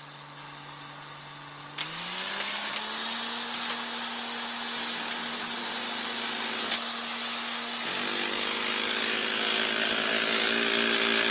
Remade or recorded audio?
recorded